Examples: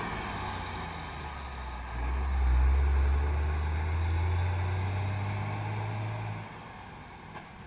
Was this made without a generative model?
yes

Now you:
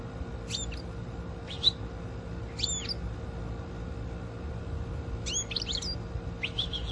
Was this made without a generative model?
yes